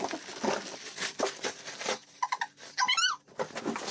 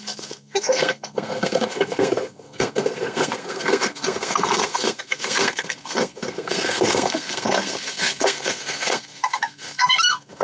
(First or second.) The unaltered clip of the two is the first